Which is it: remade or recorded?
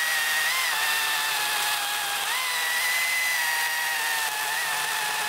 recorded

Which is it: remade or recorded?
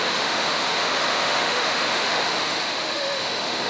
remade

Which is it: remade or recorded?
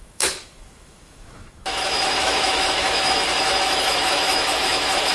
remade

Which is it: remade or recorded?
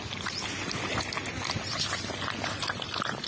recorded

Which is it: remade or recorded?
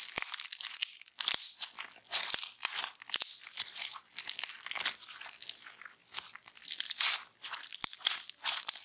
recorded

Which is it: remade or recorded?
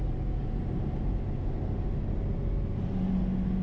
recorded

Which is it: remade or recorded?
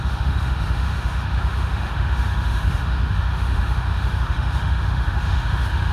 remade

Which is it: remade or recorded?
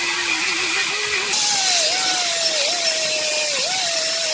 recorded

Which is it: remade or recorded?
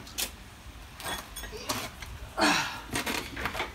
recorded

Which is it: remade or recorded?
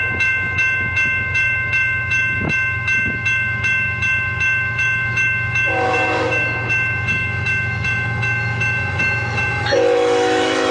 remade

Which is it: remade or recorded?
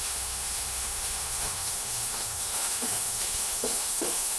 remade